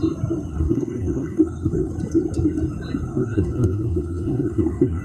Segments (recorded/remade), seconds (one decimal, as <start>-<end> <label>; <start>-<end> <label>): 0.0-0.5 recorded; 0.5-1.9 remade; 1.9-3.1 recorded; 3.1-5.0 remade